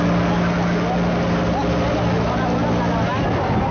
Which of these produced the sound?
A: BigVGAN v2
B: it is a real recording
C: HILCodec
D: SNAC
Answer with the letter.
B